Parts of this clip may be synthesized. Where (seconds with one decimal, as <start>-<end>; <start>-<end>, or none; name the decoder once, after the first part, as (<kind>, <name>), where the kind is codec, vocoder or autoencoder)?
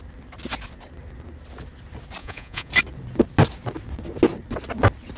2.2-2.7 (vocoder, Vocos)